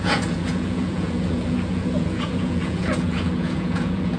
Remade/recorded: remade